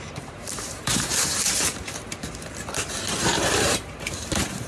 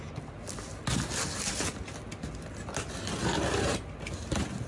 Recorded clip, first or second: second